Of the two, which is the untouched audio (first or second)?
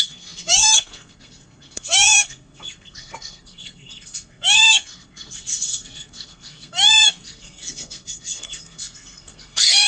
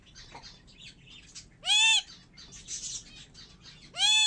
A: second